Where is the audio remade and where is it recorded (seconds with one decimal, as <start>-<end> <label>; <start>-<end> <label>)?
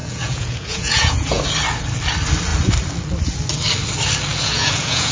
0.0-1.4 remade; 1.4-4.3 recorded; 4.3-5.1 remade